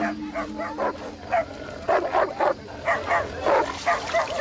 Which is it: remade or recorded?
recorded